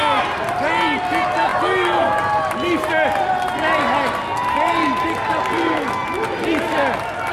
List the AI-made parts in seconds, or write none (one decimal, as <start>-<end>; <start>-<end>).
0.0-0.5